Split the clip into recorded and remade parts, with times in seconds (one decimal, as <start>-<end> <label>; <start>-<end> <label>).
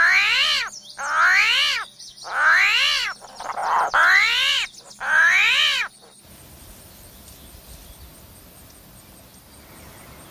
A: 0.0-10.3 recorded